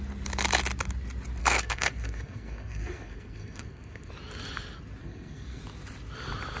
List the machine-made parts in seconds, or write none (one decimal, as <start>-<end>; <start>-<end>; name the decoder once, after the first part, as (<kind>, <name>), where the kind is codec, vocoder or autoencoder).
1.4-4.1 (codec, SNAC); 5.0-5.6